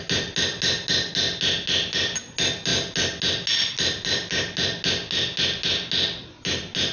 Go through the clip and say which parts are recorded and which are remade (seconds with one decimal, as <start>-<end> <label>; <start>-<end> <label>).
0.0-6.9 recorded